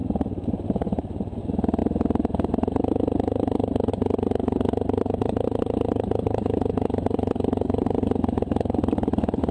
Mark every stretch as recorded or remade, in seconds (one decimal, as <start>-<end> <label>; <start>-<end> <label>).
0.0-1.4 remade; 1.4-9.5 recorded